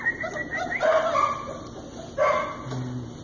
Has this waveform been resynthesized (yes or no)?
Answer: no